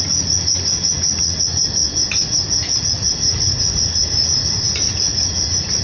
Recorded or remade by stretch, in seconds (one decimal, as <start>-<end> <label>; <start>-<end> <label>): 0.0-1.8 remade; 1.8-2.8 recorded; 2.8-5.8 remade